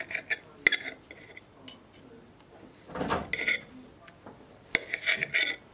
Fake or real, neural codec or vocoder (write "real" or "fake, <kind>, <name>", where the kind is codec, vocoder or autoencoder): real